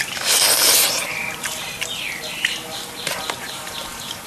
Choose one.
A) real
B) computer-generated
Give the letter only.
A